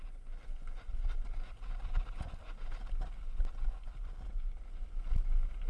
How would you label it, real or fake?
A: real